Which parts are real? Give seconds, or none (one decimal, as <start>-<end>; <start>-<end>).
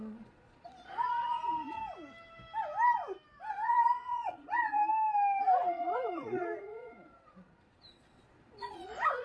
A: 1.8-3.5; 4.8-5.4